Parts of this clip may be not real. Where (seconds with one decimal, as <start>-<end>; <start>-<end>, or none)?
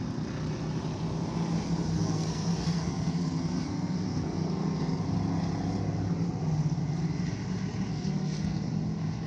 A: 1.9-5.0; 7.9-8.7